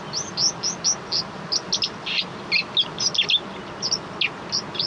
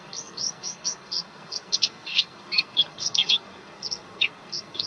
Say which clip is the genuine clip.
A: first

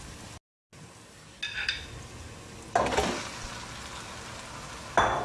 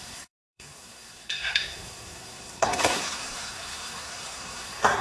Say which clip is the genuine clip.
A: first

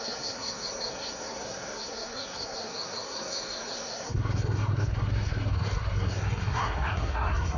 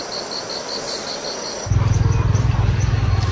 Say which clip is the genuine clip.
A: second